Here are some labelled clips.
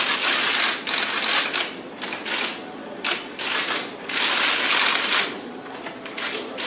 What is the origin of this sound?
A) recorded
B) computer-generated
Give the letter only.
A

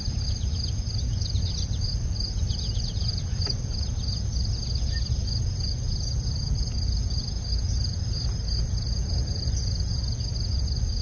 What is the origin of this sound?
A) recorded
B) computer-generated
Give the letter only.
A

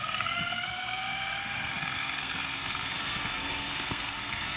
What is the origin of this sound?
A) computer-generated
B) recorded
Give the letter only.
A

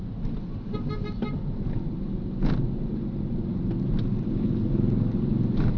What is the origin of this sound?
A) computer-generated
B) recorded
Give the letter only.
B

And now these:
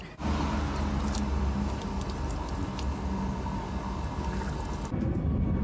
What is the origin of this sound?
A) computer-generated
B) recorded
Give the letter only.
B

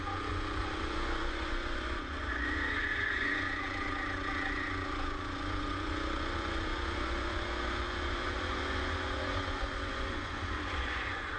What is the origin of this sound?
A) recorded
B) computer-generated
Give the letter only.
B